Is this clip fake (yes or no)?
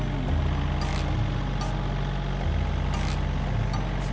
no